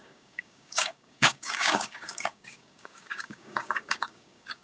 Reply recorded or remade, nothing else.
remade